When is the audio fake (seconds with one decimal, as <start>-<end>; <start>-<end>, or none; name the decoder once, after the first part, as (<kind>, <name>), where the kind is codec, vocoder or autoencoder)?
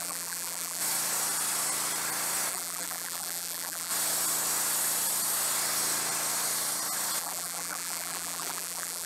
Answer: 0.0-0.8 (vocoder, BigVGAN v2); 2.5-3.9; 7.2-9.1